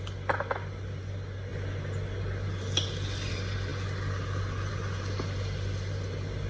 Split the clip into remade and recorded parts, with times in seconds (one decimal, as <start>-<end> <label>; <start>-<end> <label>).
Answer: 0.0-6.5 recorded